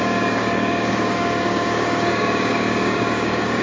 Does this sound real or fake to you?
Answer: fake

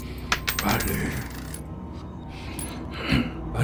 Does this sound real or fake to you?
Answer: real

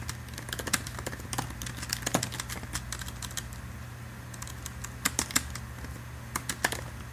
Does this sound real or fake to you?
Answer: real